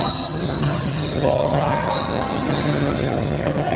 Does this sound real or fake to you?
fake